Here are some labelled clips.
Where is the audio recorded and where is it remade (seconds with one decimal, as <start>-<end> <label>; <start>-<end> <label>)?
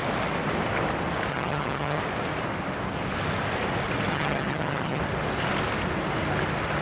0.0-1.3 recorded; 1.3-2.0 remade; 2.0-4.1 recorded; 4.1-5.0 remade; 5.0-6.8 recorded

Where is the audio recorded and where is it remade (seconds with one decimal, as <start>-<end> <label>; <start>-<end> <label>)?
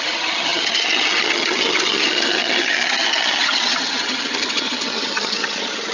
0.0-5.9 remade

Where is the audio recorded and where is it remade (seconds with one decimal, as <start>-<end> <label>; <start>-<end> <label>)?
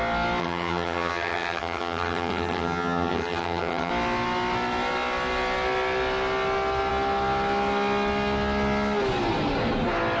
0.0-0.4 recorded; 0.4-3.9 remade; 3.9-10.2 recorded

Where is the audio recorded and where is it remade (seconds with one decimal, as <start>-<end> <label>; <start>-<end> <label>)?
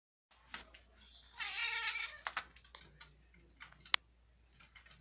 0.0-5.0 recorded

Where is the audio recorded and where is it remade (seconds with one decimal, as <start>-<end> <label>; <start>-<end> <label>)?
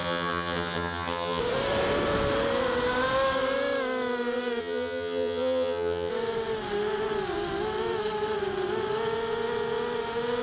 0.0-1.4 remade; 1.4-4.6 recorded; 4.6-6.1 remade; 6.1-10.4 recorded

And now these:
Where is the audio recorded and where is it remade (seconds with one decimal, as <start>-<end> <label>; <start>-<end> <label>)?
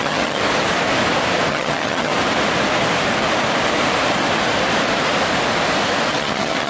0.0-0.4 remade; 0.4-1.5 recorded; 1.5-2.1 remade; 2.1-6.1 recorded; 6.1-6.7 remade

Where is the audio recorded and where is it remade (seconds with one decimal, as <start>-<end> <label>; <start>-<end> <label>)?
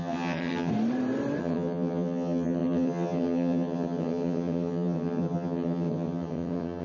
0.0-0.7 remade; 0.7-1.4 recorded; 1.4-6.8 remade